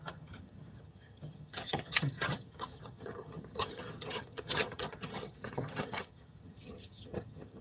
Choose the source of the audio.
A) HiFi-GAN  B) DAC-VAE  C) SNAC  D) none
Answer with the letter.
A